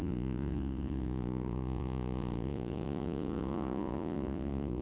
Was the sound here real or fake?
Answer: fake